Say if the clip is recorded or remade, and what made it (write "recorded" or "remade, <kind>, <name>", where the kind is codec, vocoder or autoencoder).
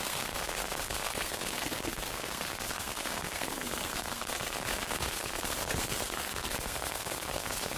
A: remade, codec, SNAC